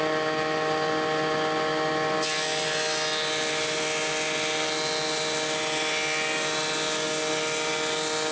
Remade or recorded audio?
recorded